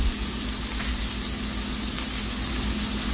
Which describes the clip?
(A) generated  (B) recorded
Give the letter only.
B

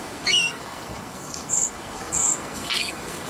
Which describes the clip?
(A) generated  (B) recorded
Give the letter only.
A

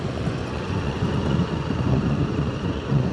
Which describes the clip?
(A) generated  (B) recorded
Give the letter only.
A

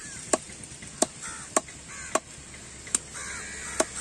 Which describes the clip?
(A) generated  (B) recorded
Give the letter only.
B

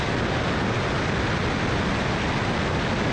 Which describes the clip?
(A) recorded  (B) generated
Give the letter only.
A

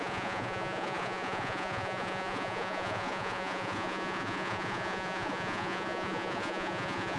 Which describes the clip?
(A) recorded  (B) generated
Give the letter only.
B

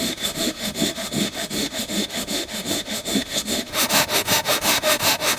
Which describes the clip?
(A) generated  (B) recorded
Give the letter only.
A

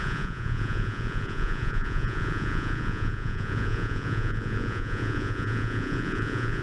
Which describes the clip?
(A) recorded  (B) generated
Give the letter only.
B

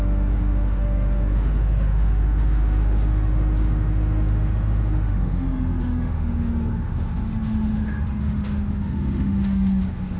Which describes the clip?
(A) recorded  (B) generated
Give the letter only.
B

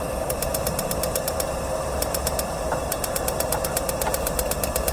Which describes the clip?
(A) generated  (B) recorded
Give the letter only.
A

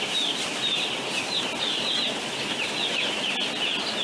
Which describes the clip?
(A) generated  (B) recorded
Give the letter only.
B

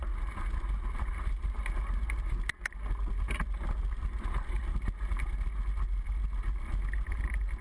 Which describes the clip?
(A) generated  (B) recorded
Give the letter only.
B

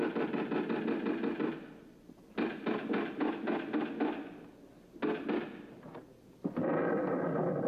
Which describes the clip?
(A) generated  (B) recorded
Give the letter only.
B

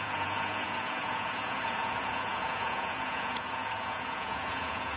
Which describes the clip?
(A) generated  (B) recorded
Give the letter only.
A